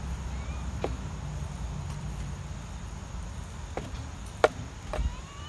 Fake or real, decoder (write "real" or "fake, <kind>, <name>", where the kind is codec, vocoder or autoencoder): real